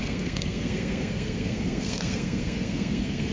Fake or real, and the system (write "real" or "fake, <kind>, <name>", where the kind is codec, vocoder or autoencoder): fake, codec, SNAC